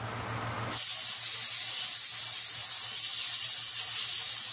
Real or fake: real